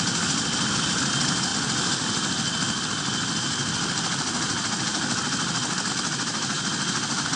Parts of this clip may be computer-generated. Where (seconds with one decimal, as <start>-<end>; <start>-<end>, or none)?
none